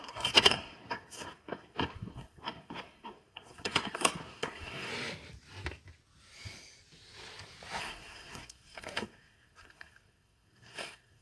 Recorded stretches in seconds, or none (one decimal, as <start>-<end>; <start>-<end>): 4.9-7.8